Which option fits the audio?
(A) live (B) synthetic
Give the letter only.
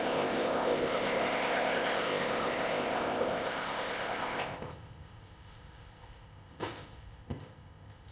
B